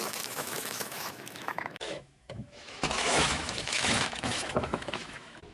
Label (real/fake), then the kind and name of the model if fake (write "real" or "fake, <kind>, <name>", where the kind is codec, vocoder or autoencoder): fake, autoencoder, DAC-VAE